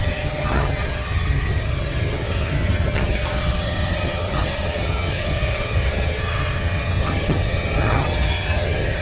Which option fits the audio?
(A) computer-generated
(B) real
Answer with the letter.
A